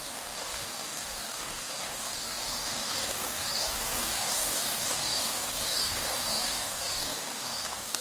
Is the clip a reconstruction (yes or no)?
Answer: yes